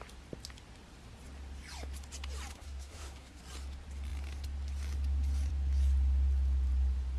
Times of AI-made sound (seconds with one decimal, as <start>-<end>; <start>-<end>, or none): 2.5-3.4

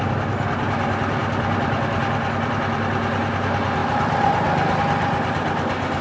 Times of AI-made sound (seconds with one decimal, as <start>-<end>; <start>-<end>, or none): 3.8-4.8